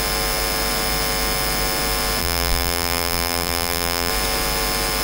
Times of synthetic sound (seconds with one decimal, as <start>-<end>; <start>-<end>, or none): 2.2-4.1